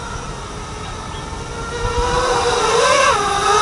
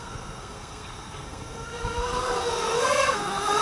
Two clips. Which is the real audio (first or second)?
first